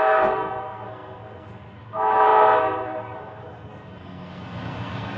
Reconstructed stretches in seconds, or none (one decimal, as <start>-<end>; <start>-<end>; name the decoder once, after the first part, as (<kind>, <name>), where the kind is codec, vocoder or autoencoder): 0.0-5.2 (codec, SNAC)